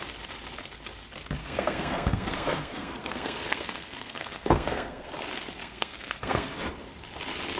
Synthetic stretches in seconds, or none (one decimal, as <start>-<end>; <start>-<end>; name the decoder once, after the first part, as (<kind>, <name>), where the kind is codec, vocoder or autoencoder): 1.4-5.1 (codec, SNAC); 5.6-6.6